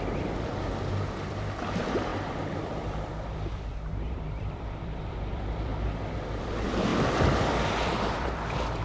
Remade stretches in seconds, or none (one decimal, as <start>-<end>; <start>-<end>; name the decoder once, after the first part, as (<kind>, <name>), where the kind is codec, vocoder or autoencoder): 0.0-5.7 (vocoder, BigVGAN v2); 6.4-8.8